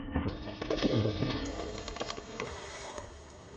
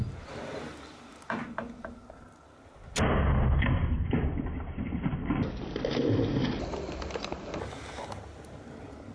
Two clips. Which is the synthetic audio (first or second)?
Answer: first